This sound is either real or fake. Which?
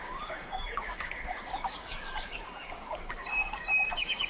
fake